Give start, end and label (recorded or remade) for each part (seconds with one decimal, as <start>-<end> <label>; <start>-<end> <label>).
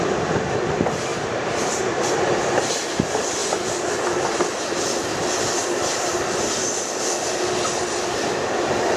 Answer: 0.0-1.1 recorded; 1.1-2.6 remade; 2.6-9.0 recorded